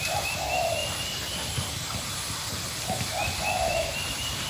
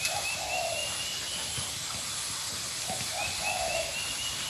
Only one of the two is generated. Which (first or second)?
first